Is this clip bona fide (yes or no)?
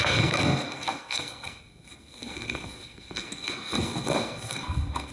no